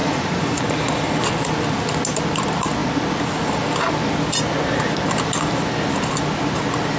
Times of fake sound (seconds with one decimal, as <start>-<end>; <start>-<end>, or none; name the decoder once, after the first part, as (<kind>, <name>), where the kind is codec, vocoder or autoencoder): 0.0-0.6 (vocoder, Vocos)